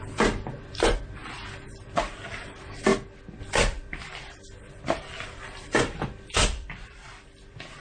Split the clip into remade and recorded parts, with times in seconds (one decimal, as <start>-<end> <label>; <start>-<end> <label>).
0.0-1.2 remade; 1.2-2.0 recorded; 2.0-2.9 remade; 2.9-3.4 recorded; 3.4-7.8 remade